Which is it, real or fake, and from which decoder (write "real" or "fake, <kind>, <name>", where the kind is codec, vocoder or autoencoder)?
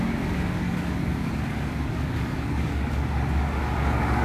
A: fake, codec, DAC